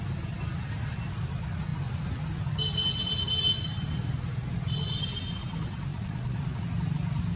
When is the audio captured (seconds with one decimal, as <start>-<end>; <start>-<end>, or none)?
0.0-5.9; 6.6-7.4